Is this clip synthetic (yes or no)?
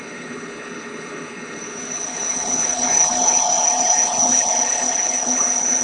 yes